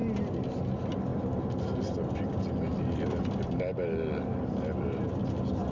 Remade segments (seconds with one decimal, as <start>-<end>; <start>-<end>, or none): none